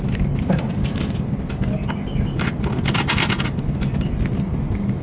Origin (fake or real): real